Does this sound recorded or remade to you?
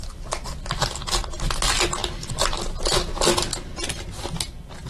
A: recorded